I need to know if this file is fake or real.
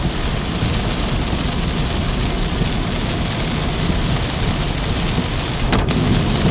real